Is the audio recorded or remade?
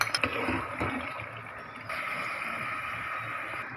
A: recorded